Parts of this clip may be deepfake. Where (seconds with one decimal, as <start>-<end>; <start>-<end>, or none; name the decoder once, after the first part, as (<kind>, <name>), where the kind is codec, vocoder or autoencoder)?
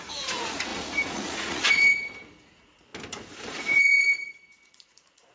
0.0-2.9 (vocoder, Vocos); 3.6-5.3